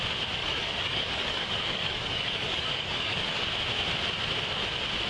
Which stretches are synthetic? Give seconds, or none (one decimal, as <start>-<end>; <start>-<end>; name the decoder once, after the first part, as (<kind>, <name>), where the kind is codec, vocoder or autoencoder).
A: 0.4-3.5 (codec, DAC)